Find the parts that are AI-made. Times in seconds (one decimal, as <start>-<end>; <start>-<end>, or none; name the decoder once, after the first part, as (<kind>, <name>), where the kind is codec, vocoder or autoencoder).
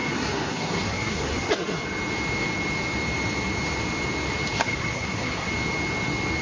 0.0-1.5 (codec, SNAC); 4.6-5.5